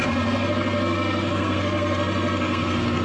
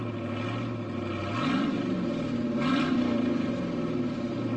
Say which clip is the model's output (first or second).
first